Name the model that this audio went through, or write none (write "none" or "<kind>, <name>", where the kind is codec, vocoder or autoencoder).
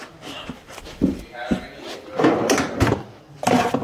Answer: none